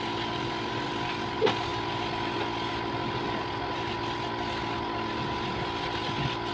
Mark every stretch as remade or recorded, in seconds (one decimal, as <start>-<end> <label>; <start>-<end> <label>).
0.0-6.5 recorded